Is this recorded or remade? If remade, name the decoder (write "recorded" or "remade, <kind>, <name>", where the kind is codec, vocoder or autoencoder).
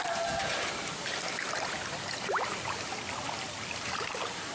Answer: recorded